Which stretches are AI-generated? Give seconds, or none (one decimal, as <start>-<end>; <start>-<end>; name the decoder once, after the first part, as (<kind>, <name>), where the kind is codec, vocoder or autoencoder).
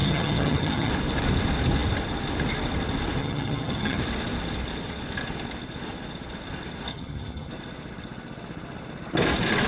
0.0-0.9 (vocoder, HiFi-GAN); 3.2-4.0; 6.9-7.5